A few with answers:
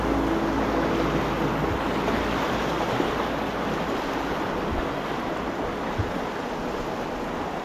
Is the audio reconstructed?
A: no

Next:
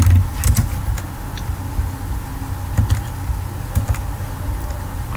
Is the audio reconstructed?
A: no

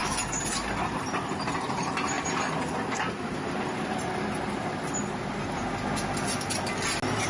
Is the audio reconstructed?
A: no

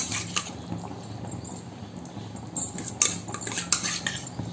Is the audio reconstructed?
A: no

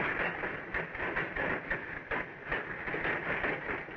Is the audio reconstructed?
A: no